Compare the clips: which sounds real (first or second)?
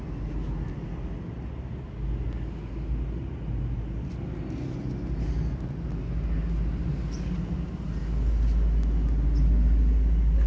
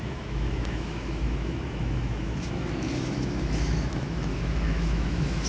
first